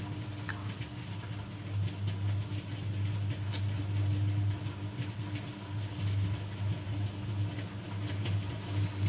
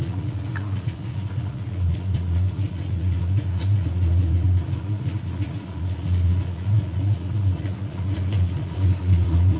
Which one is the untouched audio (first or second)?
first